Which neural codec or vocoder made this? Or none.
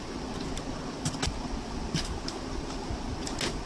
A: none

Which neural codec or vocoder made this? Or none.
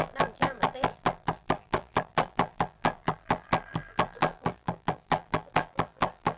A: vocoder, BigVGAN v2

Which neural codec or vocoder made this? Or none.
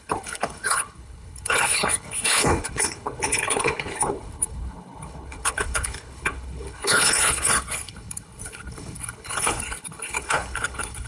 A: codec, HILCodec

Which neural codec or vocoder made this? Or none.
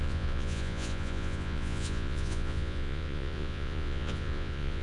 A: vocoder, Vocos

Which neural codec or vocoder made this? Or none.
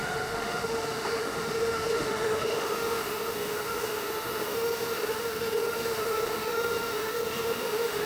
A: autoencoder, DAC-VAE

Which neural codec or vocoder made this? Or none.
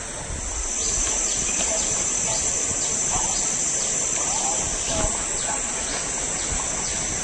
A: none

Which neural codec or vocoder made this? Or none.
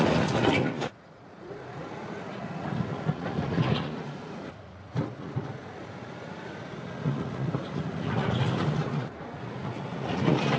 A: vocoder, Vocos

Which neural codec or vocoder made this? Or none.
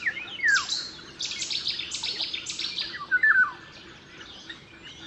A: none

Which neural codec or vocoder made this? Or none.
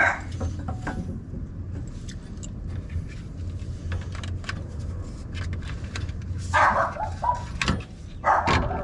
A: none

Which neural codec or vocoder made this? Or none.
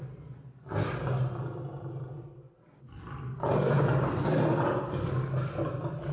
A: none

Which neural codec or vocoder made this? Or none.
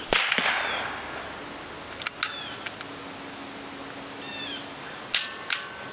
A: none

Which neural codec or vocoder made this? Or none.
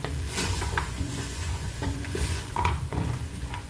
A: vocoder, Vocos